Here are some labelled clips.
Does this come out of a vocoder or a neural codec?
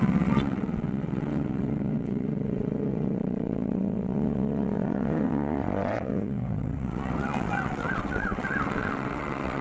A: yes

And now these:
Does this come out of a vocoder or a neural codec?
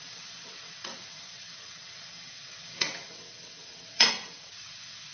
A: yes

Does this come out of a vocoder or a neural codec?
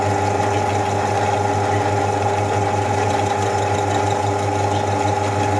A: no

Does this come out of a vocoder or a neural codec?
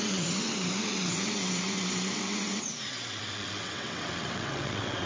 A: yes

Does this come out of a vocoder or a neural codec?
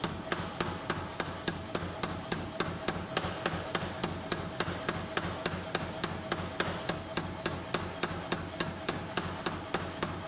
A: no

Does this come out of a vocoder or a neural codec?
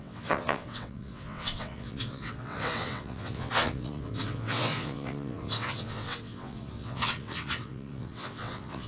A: yes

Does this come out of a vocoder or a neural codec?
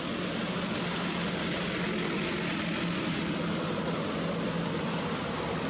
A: no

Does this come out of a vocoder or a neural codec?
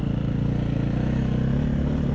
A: no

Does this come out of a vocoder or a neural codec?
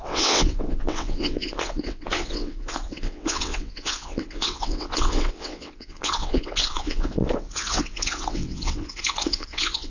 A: yes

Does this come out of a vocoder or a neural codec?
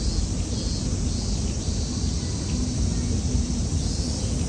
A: no